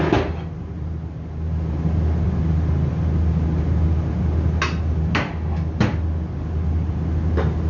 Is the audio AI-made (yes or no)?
no